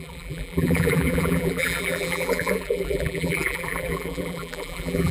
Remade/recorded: remade